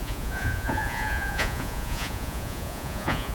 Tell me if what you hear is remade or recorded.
remade